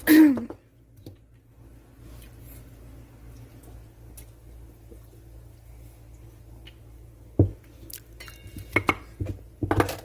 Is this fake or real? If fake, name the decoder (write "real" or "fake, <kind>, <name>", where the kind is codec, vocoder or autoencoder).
real